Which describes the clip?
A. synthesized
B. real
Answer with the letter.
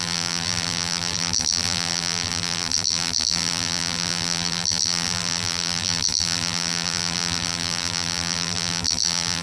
A